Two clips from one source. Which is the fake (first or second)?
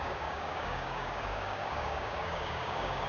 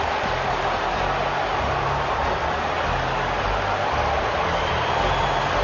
first